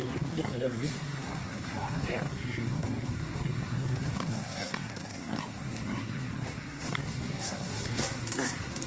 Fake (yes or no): yes